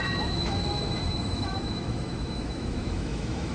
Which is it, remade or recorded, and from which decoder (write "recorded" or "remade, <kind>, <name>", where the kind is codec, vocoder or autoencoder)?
remade, autoencoder, DAC-VAE